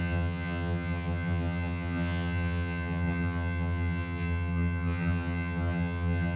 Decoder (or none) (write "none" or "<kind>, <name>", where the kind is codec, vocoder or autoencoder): vocoder, HiFi-GAN